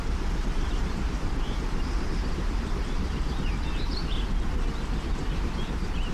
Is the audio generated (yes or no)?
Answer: no